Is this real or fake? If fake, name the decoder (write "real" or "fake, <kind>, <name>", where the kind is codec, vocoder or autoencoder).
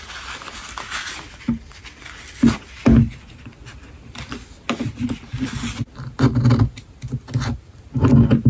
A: real